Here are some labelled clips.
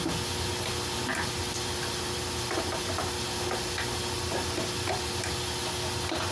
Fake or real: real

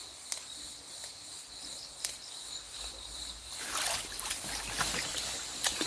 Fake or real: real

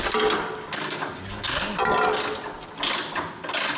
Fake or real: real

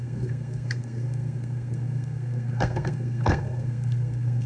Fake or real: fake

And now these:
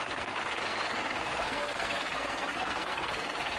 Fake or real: fake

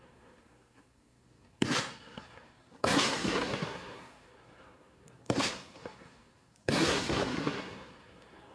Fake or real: fake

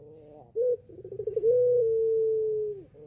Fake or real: real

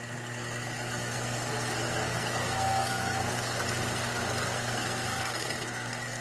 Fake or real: fake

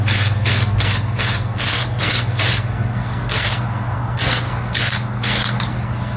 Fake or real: fake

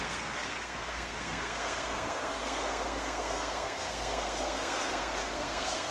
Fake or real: fake